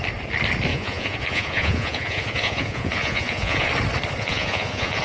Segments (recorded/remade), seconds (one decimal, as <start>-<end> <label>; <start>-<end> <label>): 0.0-0.7 recorded; 0.7-3.7 remade; 3.7-4.2 recorded; 4.2-5.0 remade